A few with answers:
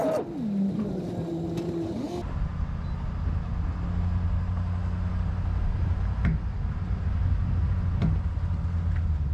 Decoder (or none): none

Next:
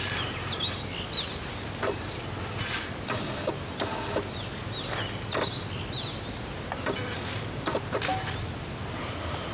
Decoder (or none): none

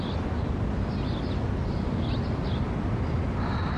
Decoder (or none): none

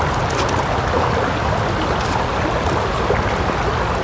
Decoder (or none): none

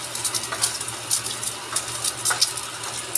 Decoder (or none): none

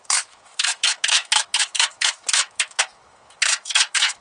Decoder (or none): autoencoder, DAC-VAE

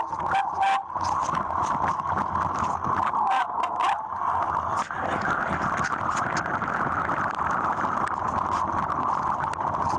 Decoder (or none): none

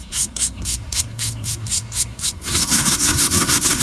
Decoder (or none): codec, SNAC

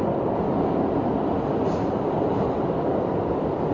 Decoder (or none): none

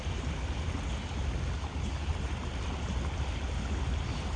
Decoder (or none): none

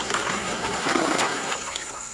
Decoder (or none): codec, SNAC